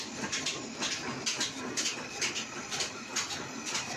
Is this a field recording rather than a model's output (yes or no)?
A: yes